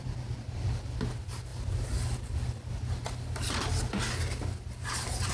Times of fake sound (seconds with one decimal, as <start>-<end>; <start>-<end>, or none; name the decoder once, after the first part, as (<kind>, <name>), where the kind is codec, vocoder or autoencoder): none